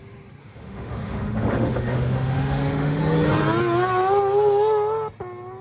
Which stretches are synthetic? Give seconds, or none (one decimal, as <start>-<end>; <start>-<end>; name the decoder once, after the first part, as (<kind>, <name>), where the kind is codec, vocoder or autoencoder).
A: 0.4-3.0 (autoencoder, DAC-VAE)